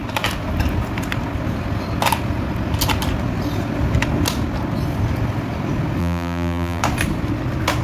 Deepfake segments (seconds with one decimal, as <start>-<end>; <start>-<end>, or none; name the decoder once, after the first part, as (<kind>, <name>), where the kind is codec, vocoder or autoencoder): 6.0-6.8 (vocoder, BigVGAN v2)